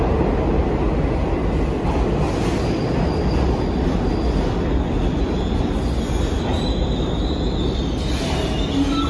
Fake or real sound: real